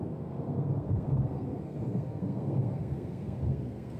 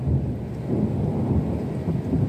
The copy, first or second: first